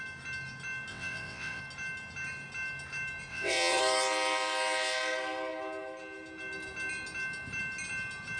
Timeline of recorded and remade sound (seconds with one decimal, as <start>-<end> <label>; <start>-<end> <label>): 0.0-0.9 recorded; 0.9-1.6 remade; 1.6-3.3 recorded; 3.3-3.8 remade; 3.8-8.4 recorded